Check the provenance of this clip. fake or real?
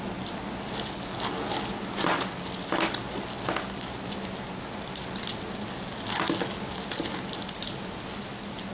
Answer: real